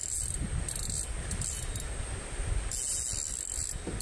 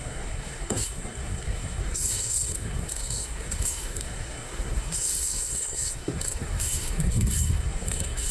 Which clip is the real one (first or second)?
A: first